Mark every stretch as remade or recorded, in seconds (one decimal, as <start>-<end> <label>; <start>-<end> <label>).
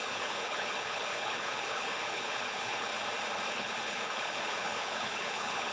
0.0-2.9 remade; 2.9-3.5 recorded; 3.5-5.7 remade